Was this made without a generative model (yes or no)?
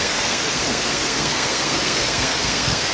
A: no